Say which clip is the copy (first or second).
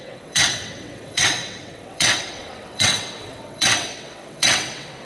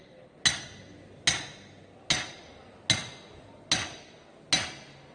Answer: first